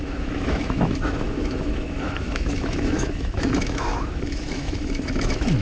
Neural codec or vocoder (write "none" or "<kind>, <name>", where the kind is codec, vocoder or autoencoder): autoencoder, DAC-VAE